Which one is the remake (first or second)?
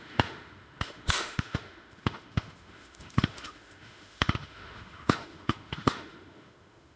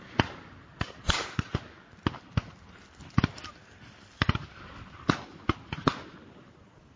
first